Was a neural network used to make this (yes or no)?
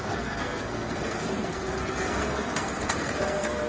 yes